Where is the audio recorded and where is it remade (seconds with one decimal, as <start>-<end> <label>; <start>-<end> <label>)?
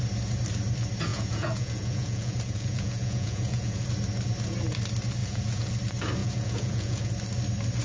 0.0-1.1 recorded; 1.1-3.8 remade; 3.8-5.2 recorded; 5.2-5.7 remade; 5.7-6.2 recorded; 6.2-7.1 remade; 7.1-7.8 recorded